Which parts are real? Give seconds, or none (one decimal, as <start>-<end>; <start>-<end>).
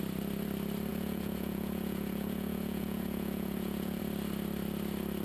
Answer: 0.0-0.9; 4.0-5.2